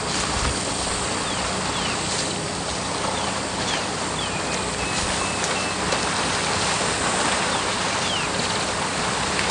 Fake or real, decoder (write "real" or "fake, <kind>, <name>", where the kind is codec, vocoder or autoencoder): real